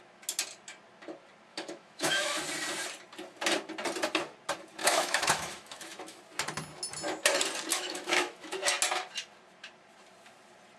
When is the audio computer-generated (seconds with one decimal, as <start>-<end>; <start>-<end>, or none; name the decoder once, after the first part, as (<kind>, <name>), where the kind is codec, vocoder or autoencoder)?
1.5-2.4 (autoencoder, DAC-VAE); 4.8-6.2; 7.7-8.5